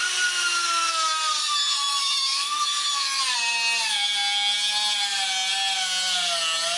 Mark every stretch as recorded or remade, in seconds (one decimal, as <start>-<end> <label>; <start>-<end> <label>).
0.0-1.4 recorded; 1.4-3.2 remade; 3.2-6.8 recorded